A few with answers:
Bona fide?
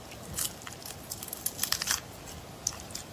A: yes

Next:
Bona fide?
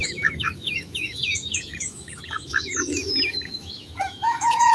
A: no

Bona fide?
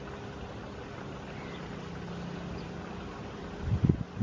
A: yes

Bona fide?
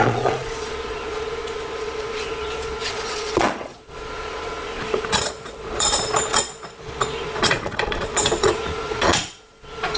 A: no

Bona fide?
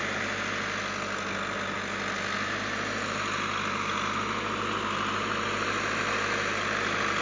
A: yes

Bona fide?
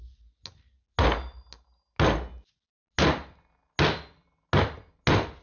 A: yes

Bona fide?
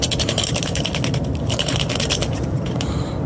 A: yes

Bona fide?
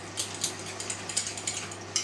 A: yes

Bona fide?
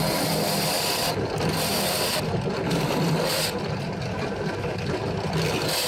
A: yes